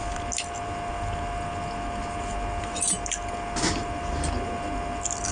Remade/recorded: recorded